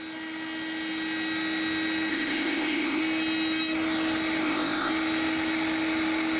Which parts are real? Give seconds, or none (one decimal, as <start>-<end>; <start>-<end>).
0.0-2.1; 3.0-4.4; 4.9-6.4

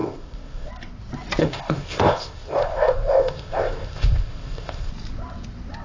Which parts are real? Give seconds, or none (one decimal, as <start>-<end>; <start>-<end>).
0.7-1.4; 4.9-5.8

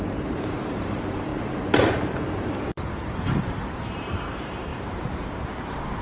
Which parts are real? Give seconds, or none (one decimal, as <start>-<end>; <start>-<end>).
1.3-2.3

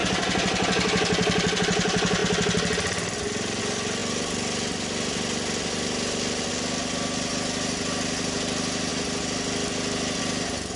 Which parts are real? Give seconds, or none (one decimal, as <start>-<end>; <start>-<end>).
0.0-10.8

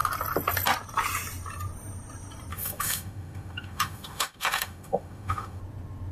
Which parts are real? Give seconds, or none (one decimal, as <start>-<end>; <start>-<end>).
0.0-2.5; 5.6-6.1